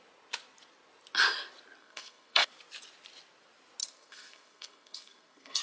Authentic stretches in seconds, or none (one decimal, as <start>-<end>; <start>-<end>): 0.0-1.8; 2.5-3.8